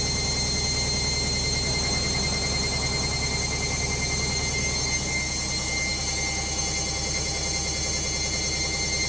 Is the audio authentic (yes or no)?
yes